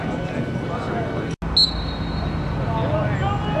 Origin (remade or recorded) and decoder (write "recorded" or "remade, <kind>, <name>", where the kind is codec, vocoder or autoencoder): recorded